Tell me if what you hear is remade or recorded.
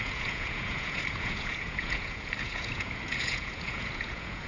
remade